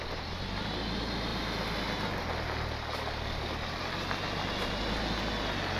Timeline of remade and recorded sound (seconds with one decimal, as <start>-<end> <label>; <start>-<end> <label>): 0.0-5.8 recorded